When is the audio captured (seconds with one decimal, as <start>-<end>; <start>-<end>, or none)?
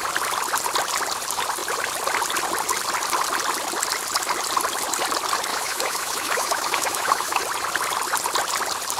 0.0-5.5; 7.4-9.0